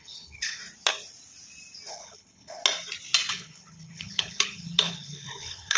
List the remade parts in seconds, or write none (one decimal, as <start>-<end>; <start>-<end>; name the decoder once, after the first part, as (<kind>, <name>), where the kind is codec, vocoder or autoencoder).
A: 0.0-0.6 (codec, HILCodec); 1.9-2.6; 3.3-5.8